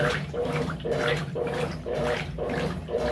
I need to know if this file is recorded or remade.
remade